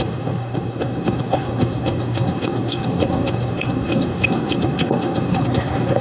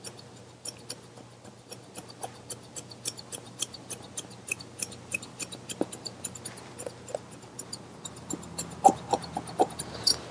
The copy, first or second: first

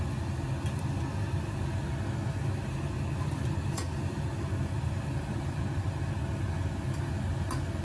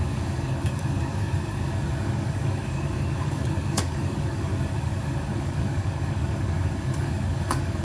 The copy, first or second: second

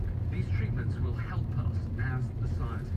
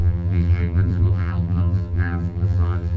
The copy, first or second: second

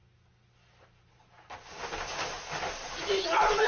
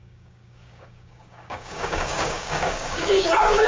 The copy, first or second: second